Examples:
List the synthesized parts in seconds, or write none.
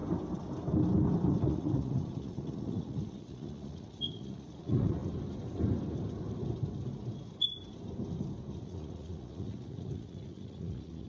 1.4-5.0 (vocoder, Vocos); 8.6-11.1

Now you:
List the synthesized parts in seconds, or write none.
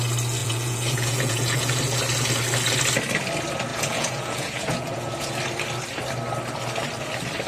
0.4-1.8 (vocoder, Vocos); 3.7-5.3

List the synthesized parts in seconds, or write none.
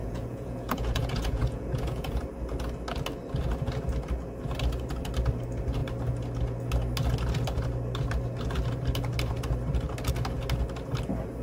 0.0-2.2 (vocoder, Vocos)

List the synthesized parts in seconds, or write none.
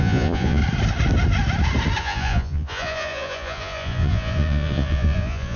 0.0-0.6 (vocoder, Vocos); 2.0-5.6